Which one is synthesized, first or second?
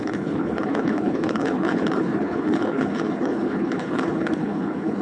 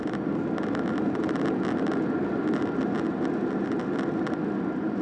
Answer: first